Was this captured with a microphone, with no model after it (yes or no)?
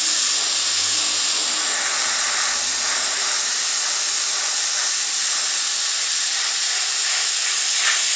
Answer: yes